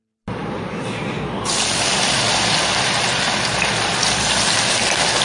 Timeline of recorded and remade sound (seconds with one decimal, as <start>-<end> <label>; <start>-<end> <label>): 0.0-5.2 remade